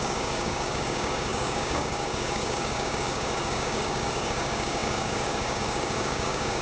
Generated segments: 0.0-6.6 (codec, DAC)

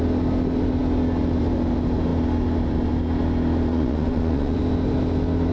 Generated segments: 3.7-4.6 (vocoder, Vocos)

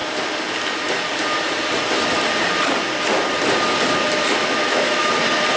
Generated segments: 4.4-5.1 (autoencoder, DAC-VAE)

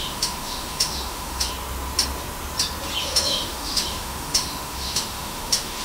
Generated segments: 0.0-1.5 (autoencoder, DAC-VAE); 3.0-5.8

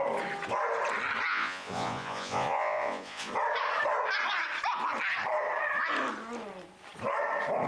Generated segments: 1.3-3.3 (vocoder, Vocos)

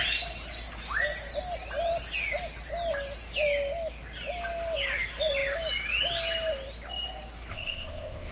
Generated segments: 7.5-8.3 (codec, ZipCodec)

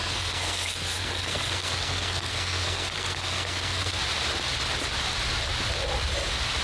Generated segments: 0.0-4.0 (codec, SNAC)